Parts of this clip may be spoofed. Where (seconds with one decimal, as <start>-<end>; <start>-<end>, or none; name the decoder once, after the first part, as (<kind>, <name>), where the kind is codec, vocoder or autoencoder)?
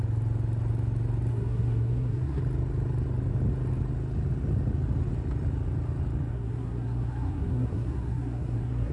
1.3-2.4 (codec, SNAC); 6.3-8.9